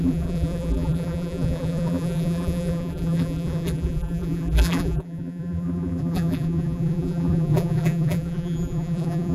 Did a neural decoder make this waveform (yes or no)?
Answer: yes